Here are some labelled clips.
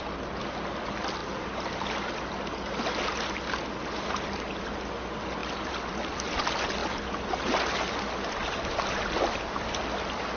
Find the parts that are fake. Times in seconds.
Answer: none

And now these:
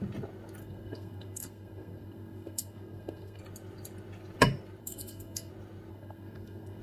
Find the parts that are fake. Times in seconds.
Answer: 0.6-3.4 (codec, SNAC); 4.8-5.5; 5.9-6.8

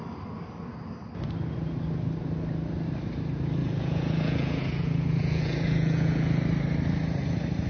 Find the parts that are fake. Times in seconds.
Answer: 3.6-6.4 (vocoder, Vocos)

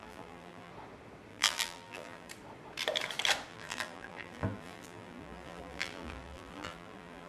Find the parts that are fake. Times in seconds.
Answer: 0.0-0.7 (vocoder, BigVGAN v2); 1.3-2.3; 3.5-7.3

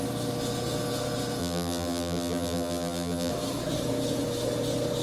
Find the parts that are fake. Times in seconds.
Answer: 1.4-3.3 (vocoder, BigVGAN v2)

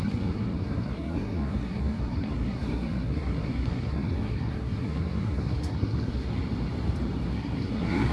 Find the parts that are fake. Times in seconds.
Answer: 0.0-6.3 (codec, SNAC); 7.3-8.1